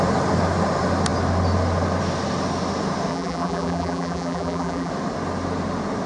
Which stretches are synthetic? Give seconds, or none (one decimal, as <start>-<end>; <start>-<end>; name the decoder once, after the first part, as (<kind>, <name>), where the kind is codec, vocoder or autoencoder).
3.1-4.9 (vocoder, BigVGAN v2)